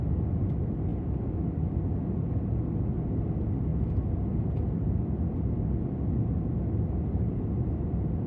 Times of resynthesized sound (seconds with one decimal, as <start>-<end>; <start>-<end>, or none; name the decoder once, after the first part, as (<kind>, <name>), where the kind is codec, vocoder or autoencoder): none